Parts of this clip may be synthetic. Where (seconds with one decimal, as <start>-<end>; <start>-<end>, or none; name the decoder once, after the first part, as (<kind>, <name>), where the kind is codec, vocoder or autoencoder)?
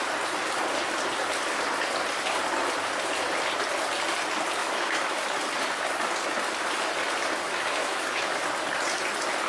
4.6-5.2 (autoencoder, DAC-VAE); 7.8-8.4